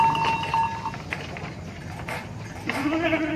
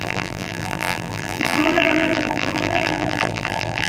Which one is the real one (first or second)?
first